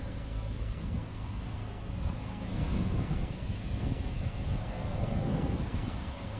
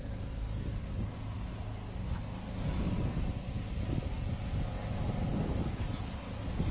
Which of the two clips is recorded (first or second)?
second